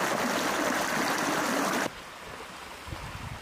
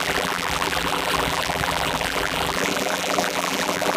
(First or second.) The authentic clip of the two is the first